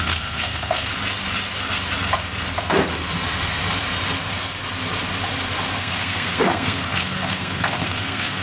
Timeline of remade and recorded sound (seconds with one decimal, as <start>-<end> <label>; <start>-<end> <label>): 0.0-0.9 remade; 0.9-5.8 recorded; 5.8-8.4 remade